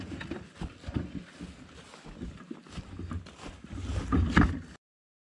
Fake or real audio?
real